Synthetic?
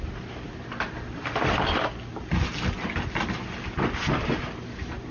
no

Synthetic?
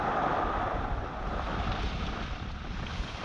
yes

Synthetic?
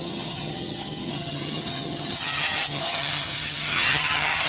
yes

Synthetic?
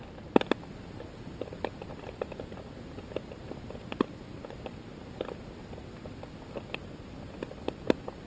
no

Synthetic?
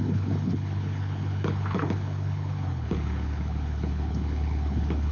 yes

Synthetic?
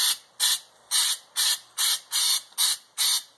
no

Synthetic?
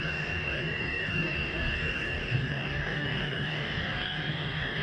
yes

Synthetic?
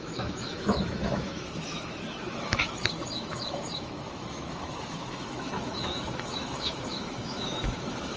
yes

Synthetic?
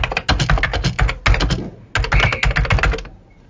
no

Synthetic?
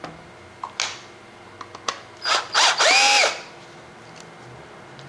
no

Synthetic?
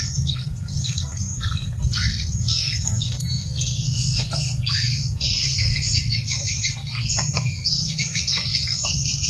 yes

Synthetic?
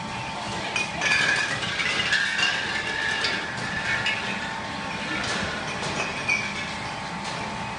no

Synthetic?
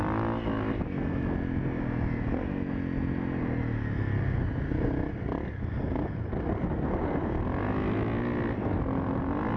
no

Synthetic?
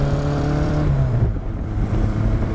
yes